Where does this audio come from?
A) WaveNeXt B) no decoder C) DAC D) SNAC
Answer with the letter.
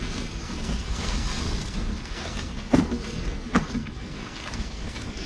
D